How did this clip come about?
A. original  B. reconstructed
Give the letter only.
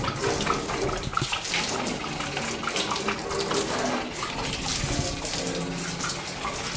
A